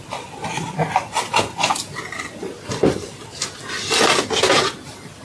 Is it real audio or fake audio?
real